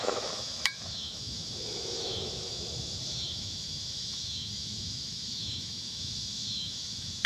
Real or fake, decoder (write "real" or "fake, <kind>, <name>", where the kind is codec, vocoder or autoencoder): fake, autoencoder, DAC-VAE